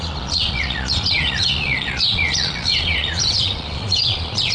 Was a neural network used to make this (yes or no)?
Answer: yes